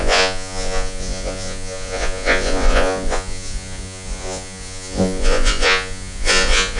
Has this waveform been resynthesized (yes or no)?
yes